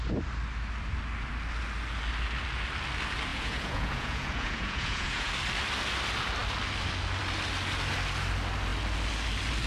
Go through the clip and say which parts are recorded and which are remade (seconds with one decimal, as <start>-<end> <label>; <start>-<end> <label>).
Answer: 0.0-3.3 recorded; 3.3-5.3 remade; 5.3-9.7 recorded